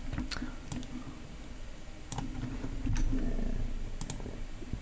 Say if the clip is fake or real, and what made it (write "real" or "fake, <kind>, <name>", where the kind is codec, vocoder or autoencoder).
real